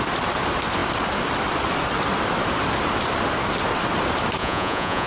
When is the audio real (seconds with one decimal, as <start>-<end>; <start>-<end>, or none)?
0.0-4.4